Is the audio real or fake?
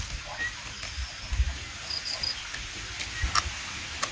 real